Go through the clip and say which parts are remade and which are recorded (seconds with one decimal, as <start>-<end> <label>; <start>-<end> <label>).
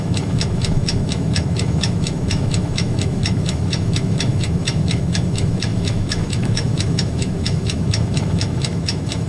0.0-9.3 remade